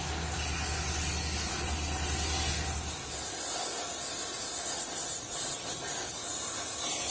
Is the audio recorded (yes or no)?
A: yes